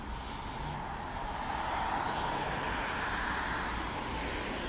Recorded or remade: recorded